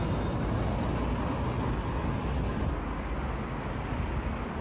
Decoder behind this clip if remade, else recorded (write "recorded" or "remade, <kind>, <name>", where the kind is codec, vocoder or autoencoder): recorded